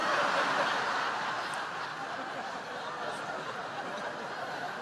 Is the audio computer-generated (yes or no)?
no